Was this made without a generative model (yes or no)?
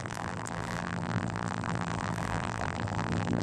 no